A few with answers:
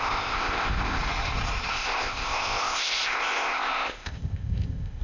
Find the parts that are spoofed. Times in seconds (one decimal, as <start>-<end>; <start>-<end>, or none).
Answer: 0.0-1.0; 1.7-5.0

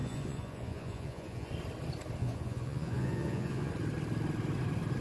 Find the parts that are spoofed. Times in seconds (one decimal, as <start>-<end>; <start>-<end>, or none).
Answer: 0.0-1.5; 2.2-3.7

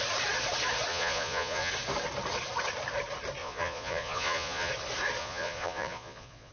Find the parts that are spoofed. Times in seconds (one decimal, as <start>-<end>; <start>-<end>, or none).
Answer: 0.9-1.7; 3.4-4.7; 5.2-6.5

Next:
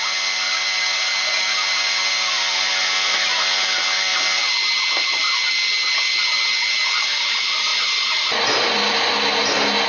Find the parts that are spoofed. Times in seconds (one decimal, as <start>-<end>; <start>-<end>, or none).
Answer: none

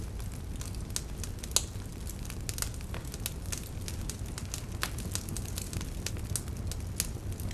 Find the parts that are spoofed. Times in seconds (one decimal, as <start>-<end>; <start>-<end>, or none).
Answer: none

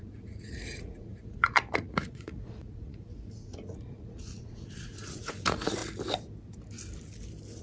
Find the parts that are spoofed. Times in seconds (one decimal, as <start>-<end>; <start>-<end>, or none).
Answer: 0.0-5.8